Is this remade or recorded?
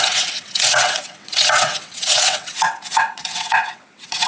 remade